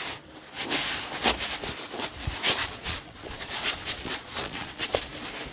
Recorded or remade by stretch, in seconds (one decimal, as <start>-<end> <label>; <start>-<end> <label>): 0.0-2.6 recorded; 2.6-5.0 remade; 5.0-5.5 recorded